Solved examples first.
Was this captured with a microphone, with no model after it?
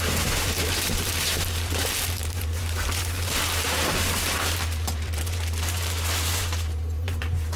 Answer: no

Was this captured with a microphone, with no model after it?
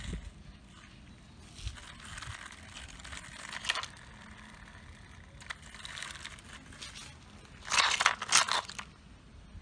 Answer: yes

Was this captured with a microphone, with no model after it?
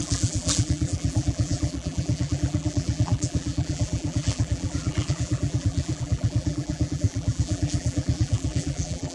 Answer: no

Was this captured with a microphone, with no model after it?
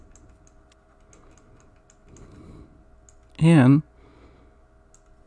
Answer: yes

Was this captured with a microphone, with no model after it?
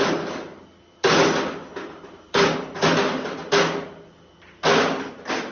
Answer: yes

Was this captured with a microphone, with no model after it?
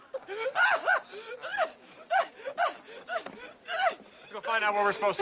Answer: yes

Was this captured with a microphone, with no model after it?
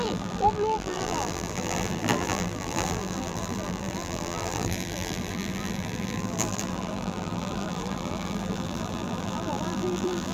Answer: no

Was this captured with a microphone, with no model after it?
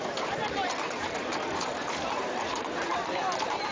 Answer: no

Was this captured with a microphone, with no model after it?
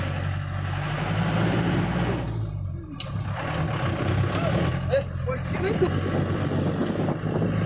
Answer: yes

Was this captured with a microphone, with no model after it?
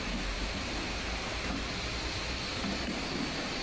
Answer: yes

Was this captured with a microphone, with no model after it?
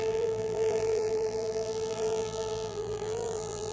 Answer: no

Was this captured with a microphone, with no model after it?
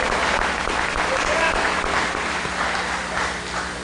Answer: yes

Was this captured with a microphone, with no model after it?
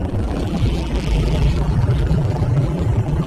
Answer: no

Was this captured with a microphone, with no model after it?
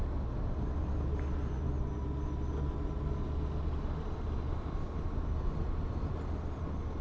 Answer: yes